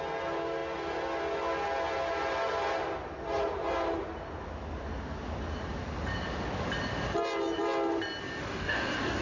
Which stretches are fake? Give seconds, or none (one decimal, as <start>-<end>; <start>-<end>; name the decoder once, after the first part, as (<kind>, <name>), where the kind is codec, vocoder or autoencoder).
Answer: 8.4-9.2 (codec, DAC)